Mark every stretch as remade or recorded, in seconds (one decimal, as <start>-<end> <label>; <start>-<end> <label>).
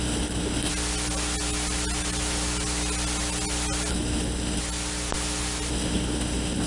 0.0-0.7 remade; 0.7-3.9 recorded; 3.9-4.6 remade; 4.6-5.7 recorded; 5.7-6.7 remade